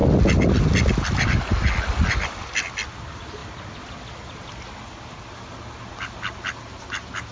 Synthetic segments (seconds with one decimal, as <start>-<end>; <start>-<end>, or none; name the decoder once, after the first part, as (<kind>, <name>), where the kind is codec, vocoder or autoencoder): none